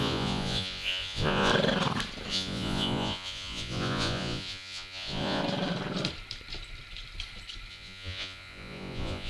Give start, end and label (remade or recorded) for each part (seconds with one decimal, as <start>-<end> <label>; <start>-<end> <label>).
0.0-1.5 remade; 1.5-2.3 recorded; 2.3-5.4 remade; 5.4-7.7 recorded; 7.7-9.3 remade